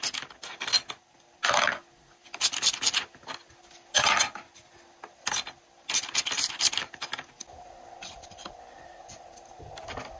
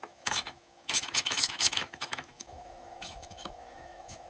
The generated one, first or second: second